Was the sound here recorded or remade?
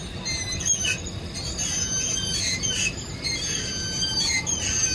recorded